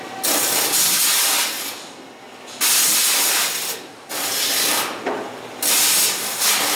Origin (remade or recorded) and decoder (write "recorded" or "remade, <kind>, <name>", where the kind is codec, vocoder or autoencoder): recorded